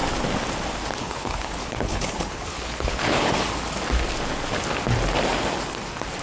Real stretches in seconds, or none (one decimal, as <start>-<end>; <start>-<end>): 0.0-1.0; 3.3-6.2